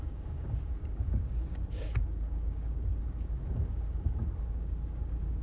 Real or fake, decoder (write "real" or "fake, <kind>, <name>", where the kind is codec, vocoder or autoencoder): fake, codec, DAC